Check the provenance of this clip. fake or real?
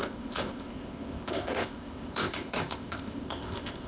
fake